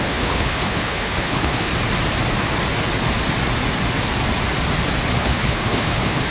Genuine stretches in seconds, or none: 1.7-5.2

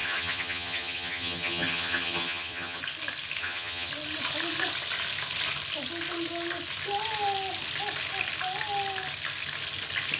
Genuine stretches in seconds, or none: 2.8-3.4; 3.9-10.2

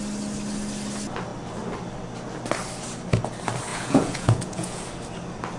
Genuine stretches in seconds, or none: 0.0-3.7; 4.8-5.6

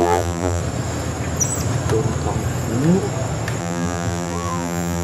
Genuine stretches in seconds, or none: 0.6-3.6